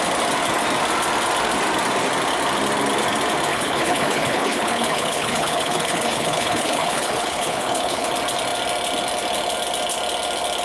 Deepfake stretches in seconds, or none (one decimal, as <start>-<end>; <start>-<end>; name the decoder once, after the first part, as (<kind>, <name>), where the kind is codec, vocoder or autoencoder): 3.5-8.1 (codec, HILCodec)